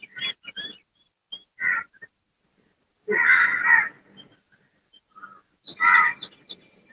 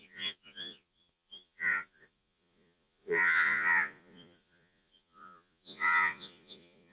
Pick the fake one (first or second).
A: second